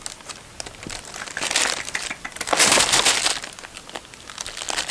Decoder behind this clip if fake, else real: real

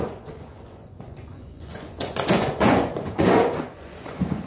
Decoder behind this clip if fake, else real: fake, vocoder, Vocos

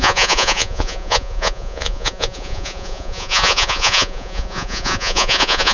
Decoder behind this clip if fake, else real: fake, vocoder, Vocos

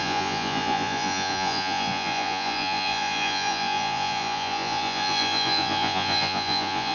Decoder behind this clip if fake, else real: fake, vocoder, Vocos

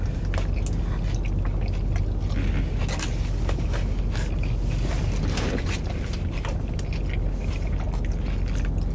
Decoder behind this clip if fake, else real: real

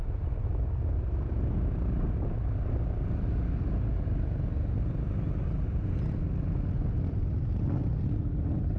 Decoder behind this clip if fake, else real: real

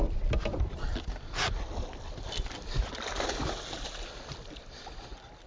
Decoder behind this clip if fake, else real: real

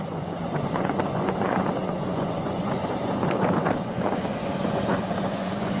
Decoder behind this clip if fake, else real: fake, vocoder, Vocos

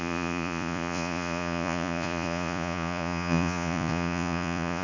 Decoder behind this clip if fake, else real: fake, vocoder, Vocos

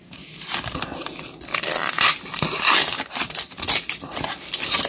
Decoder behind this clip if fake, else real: real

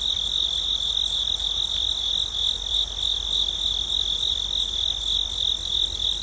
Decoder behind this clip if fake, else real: real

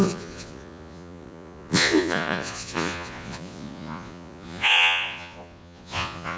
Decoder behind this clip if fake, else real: fake, vocoder, Vocos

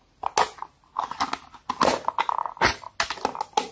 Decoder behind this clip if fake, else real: real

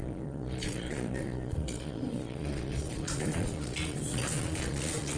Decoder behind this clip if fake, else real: fake, vocoder, Vocos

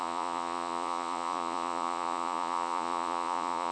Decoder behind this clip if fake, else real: fake, vocoder, Vocos